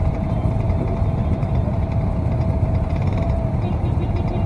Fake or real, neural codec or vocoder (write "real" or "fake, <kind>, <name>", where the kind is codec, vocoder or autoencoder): fake, vocoder, BigVGAN v2